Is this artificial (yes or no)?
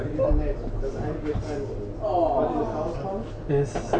no